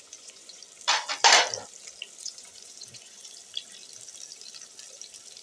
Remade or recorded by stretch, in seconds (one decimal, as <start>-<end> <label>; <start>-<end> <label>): 0.0-0.6 remade; 0.6-2.2 recorded; 2.2-3.2 remade; 3.2-5.4 recorded

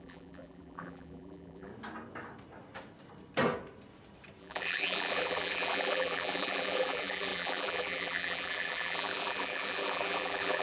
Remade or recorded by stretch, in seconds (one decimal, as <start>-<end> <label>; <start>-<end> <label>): 0.0-1.7 remade; 1.7-4.4 recorded; 4.4-10.6 remade

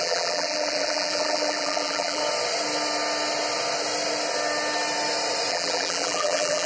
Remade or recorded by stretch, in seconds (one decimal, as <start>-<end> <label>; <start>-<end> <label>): 0.0-2.2 remade; 2.2-5.5 recorded; 5.5-6.7 remade